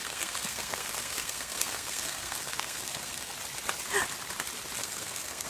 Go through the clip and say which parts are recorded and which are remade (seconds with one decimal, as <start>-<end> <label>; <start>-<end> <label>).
0.0-3.3 remade; 3.3-4.8 recorded; 4.8-5.5 remade